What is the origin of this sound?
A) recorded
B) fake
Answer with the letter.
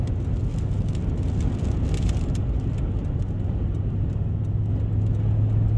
A